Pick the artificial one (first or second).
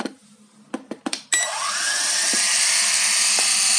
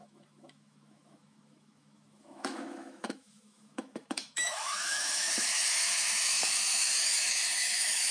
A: second